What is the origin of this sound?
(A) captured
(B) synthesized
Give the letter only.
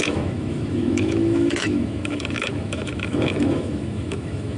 B